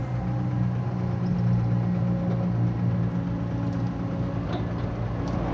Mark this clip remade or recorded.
recorded